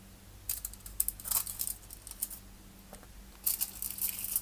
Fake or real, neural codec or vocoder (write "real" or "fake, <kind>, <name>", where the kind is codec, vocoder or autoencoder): real